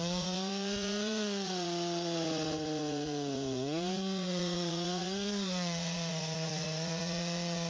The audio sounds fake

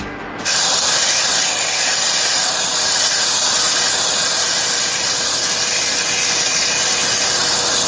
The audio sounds real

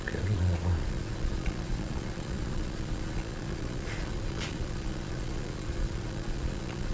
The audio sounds fake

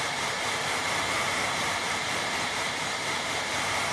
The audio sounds fake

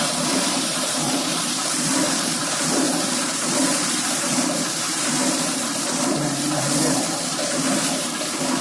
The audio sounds fake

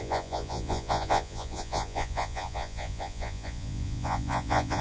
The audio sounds fake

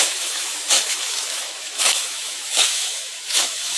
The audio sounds fake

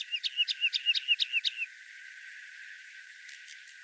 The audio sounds real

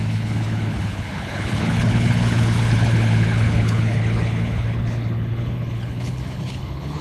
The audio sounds fake